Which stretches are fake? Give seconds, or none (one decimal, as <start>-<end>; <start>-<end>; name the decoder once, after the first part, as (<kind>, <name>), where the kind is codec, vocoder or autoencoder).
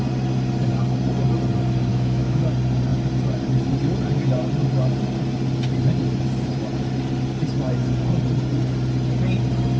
1.9-2.4 (autoencoder, DAC-VAE)